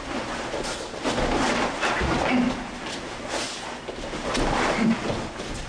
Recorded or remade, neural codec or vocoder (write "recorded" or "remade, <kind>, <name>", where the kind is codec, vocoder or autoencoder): recorded